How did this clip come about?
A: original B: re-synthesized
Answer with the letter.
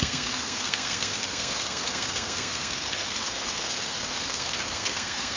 B